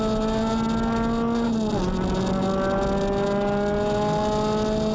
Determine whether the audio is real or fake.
real